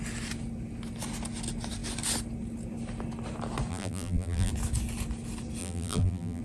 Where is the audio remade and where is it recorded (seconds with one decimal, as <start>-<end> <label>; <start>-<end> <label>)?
0.0-3.7 recorded; 3.7-4.5 remade; 4.5-5.6 recorded; 5.6-6.4 remade

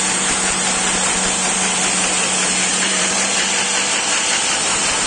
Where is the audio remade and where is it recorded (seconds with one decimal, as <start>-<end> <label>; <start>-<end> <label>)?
0.0-2.7 recorded; 2.7-3.3 remade; 3.3-5.1 recorded

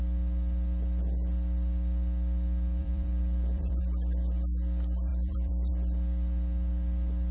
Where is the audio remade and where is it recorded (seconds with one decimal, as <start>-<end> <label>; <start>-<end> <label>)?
0.0-2.8 recorded; 2.8-3.8 remade; 3.8-5.1 recorded; 5.1-5.7 remade; 5.7-7.3 recorded

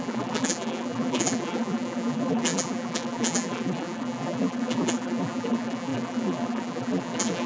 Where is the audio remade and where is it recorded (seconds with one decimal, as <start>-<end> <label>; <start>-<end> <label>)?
0.0-7.5 remade

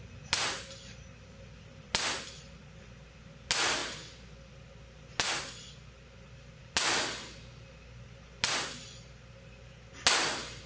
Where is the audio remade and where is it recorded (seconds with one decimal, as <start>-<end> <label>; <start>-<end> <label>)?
0.0-10.7 recorded